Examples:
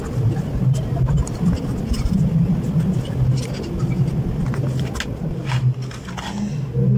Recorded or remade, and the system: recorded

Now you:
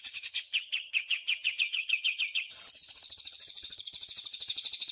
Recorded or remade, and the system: remade, vocoder, HiFi-GAN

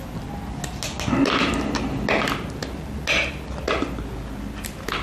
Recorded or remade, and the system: recorded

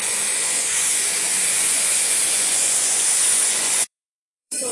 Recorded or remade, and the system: remade, vocoder, Vocos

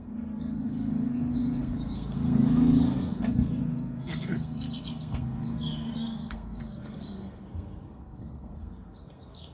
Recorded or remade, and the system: remade, codec, SNAC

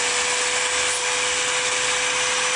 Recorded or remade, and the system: recorded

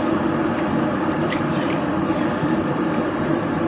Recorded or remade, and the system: remade, vocoder, BigVGAN v2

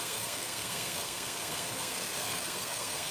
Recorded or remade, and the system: remade, codec, SNAC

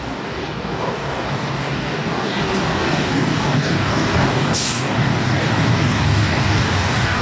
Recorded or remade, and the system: remade, codec, DAC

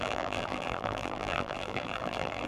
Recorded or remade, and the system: remade, vocoder, BigVGAN v2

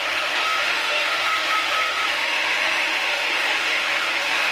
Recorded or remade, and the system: remade, autoencoder, DAC-VAE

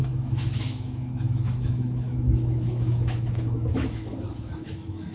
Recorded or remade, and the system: remade, autoencoder, DAC-VAE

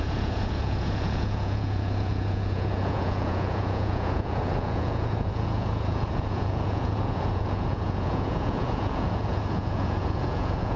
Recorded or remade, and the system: remade, vocoder, Vocos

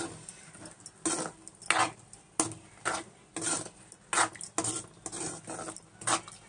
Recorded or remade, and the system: recorded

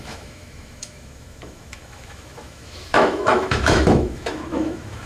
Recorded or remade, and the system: remade, autoencoder, DAC-VAE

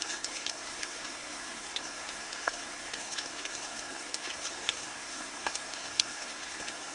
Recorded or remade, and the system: remade, codec, SNAC